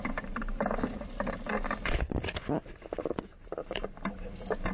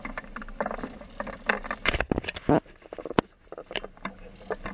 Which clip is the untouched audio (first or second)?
second